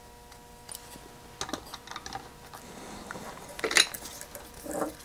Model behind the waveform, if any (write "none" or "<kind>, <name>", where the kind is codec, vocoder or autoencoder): none